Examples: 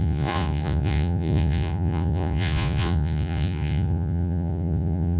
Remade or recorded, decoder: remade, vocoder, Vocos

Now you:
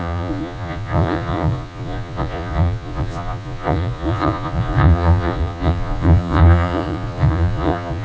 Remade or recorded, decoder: remade, vocoder, Vocos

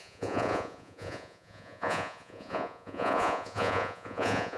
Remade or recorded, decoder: remade, vocoder, Vocos